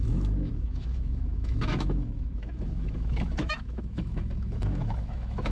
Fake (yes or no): yes